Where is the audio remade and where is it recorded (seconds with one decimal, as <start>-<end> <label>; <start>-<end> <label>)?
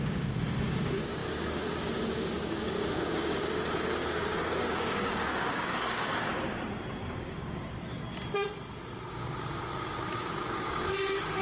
0.0-6.3 remade; 6.3-7.0 recorded; 7.0-7.6 remade; 7.6-9.1 recorded; 9.1-11.4 remade